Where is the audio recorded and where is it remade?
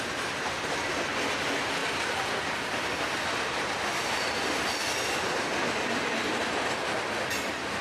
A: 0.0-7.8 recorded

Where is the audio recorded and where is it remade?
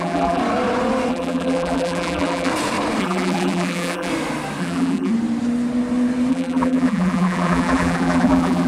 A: 0.0-0.4 remade; 0.4-1.1 recorded; 1.1-2.5 remade; 2.5-3.0 recorded; 3.0-4.1 remade; 4.1-4.6 recorded; 4.6-5.1 remade; 5.1-6.3 recorded; 6.3-8.7 remade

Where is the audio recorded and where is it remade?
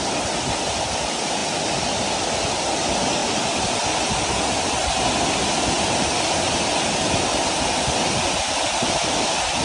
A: 0.0-9.6 recorded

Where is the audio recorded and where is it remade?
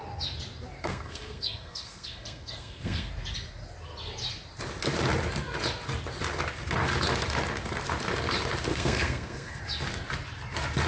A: 0.0-0.8 recorded; 0.8-3.1 remade; 3.1-8.7 recorded; 8.7-9.6 remade; 9.6-10.9 recorded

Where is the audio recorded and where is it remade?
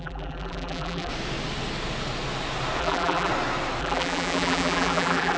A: 0.0-1.1 remade; 1.1-2.8 recorded; 2.8-3.3 remade; 3.3-3.8 recorded; 3.8-5.4 remade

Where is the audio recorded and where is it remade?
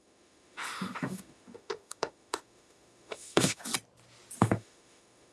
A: 0.0-3.7 remade; 3.7-4.4 recorded; 4.4-5.3 remade